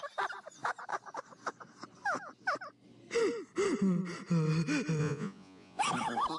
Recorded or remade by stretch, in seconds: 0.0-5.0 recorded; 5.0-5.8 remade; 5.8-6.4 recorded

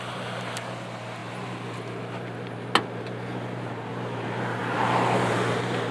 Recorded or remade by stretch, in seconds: 0.0-5.9 recorded

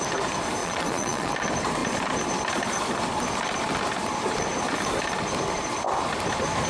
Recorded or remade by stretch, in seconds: 0.0-0.6 recorded; 0.6-1.3 remade; 1.3-6.7 recorded

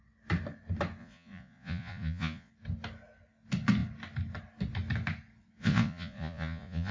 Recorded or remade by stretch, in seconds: 0.0-1.0 recorded; 1.0-2.5 remade; 2.5-5.6 recorded; 5.6-6.9 remade